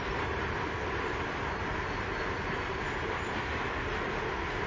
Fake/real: real